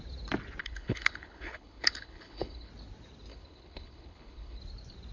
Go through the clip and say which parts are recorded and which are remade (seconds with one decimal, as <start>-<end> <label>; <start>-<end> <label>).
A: 0.0-0.6 recorded; 0.6-2.7 remade; 2.7-3.3 recorded; 3.3-4.6 remade; 4.6-5.1 recorded